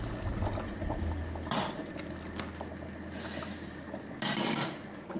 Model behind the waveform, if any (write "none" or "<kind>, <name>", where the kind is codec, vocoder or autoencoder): none